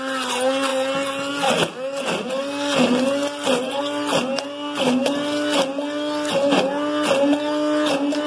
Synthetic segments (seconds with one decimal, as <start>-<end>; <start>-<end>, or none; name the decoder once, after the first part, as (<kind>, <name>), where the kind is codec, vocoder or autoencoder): none